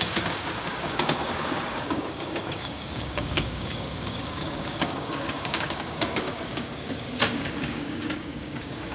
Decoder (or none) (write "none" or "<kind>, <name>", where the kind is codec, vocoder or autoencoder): codec, DAC